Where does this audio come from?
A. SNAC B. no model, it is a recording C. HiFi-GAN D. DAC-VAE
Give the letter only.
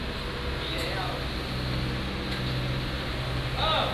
B